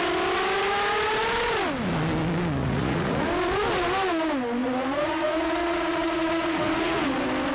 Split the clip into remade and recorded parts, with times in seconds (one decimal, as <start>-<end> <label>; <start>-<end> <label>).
0.0-2.6 recorded; 2.6-3.3 remade; 3.3-4.6 recorded; 4.6-7.1 remade; 7.1-7.5 recorded